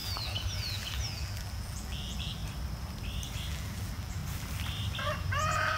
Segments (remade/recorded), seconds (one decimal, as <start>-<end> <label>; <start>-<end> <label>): 0.0-2.4 remade; 2.4-3.5 recorded; 3.5-4.2 remade; 4.2-5.2 recorded; 5.2-5.8 remade